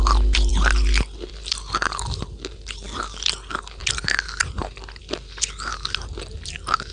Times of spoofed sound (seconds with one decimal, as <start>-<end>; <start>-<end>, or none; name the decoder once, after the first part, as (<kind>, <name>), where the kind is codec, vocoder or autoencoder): none